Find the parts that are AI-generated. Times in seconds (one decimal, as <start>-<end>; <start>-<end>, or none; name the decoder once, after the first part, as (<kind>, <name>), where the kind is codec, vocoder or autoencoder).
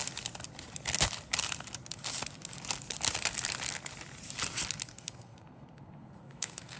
4.9-6.8 (codec, SNAC)